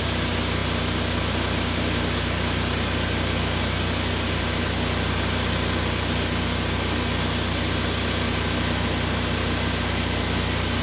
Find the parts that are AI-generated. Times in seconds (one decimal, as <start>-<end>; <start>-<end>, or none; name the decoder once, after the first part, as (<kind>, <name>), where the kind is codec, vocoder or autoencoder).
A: none